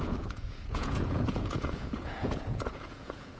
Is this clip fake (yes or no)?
yes